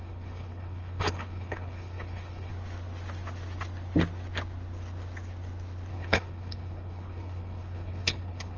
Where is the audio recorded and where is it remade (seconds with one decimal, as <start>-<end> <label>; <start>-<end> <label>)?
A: 0.0-2.5 remade; 2.5-5.9 recorded; 5.9-8.6 remade